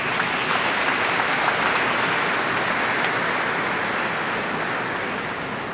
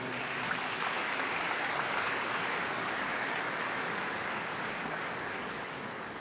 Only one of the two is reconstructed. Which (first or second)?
second